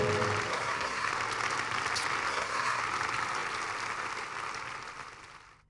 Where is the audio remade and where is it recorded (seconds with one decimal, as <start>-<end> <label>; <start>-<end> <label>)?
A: 0.0-0.5 recorded; 0.5-1.1 remade; 1.1-2.3 recorded; 2.3-2.8 remade; 2.8-5.7 recorded